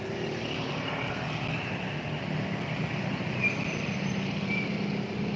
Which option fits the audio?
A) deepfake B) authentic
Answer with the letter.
B